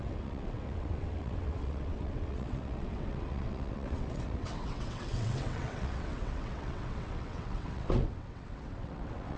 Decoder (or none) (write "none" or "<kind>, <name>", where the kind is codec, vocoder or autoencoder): vocoder, WaveNeXt